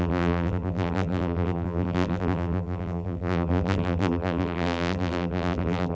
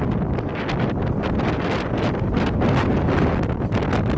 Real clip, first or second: second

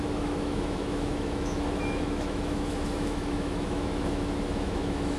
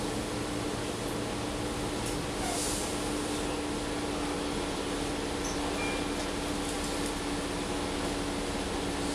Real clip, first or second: second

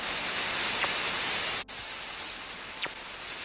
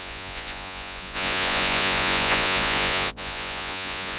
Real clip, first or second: first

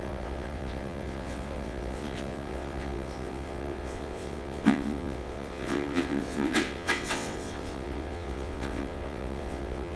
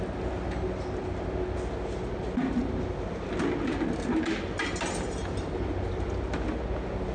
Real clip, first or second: second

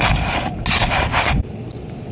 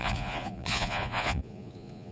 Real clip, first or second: first